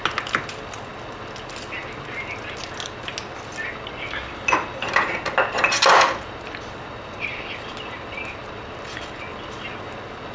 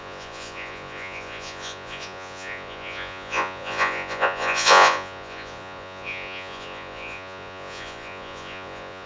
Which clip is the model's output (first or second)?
second